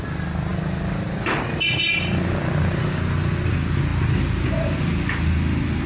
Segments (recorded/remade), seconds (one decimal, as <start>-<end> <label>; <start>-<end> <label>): 0.0-5.9 recorded